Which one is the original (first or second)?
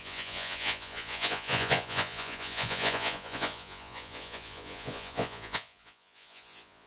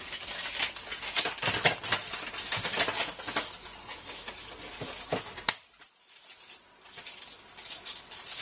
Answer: second